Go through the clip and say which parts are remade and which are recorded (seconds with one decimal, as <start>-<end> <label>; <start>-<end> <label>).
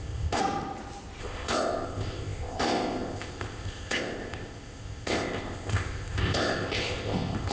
0.0-0.4 remade; 0.4-1.2 recorded; 1.2-7.5 remade